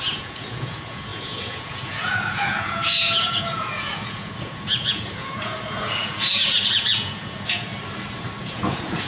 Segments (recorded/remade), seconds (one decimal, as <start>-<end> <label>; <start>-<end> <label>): 0.0-7.7 remade; 7.7-8.4 recorded; 8.4-9.1 remade